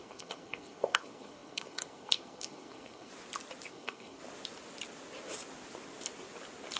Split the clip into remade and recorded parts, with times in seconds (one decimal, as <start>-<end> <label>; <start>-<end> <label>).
0.0-3.1 remade; 3.1-3.7 recorded; 3.7-4.2 remade; 4.2-6.8 recorded

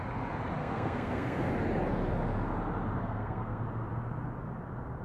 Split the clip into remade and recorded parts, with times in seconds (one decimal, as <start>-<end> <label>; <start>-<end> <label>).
0.0-0.6 recorded; 0.6-1.5 remade; 1.5-3.0 recorded; 3.0-3.6 remade; 3.6-5.0 recorded

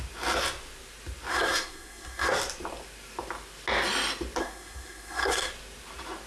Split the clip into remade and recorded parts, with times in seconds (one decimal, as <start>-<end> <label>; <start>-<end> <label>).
0.0-1.3 recorded; 1.3-2.3 remade; 2.3-4.4 recorded; 4.4-5.5 remade; 5.5-6.3 recorded

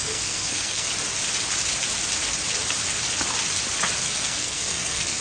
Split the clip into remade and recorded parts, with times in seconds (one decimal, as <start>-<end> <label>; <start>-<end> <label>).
0.0-0.9 remade; 0.9-4.0 recorded; 4.0-5.2 remade

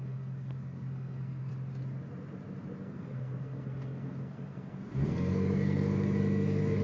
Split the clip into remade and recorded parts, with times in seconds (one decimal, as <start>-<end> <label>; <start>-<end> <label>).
0.0-1.5 remade; 1.5-2.8 recorded; 2.8-6.8 remade

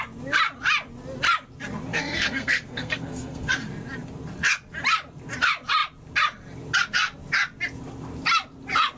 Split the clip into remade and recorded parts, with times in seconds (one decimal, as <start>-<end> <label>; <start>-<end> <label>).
0.0-1.9 recorded; 1.9-3.5 remade; 3.5-9.0 recorded